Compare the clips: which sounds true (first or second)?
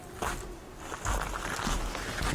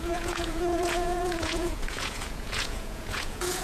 first